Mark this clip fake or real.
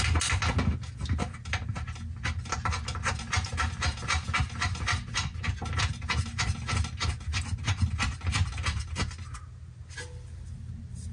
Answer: real